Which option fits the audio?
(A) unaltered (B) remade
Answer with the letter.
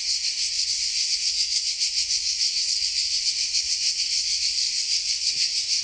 B